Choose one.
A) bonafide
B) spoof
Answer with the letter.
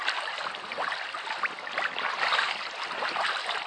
A